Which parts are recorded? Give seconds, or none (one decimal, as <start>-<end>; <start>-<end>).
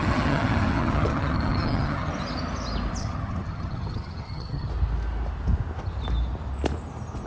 2.1-3.0; 4.7-7.3